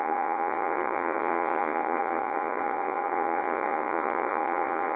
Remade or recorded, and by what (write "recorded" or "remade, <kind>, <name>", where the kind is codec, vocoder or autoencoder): remade, vocoder, Vocos